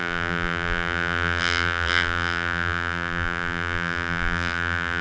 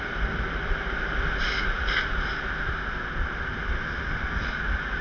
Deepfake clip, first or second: first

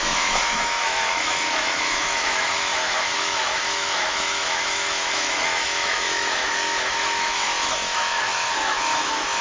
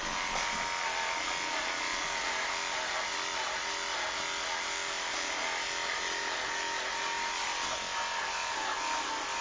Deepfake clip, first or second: first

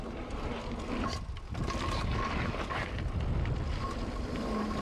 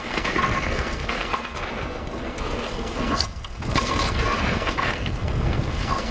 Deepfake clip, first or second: second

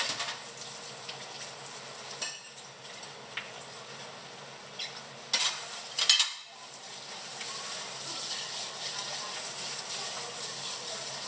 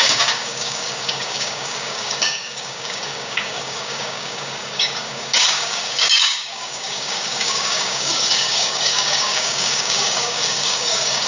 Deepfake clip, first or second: second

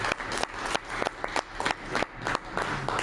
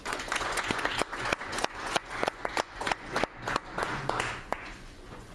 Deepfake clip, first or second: second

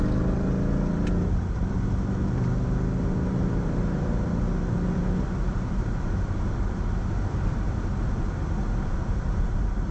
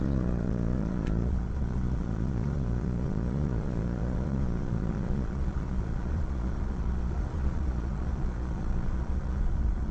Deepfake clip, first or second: second